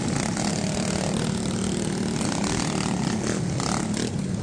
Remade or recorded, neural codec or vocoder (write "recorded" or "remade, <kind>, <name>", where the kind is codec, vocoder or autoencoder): recorded